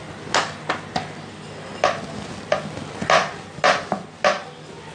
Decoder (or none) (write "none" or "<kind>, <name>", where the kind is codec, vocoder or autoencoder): none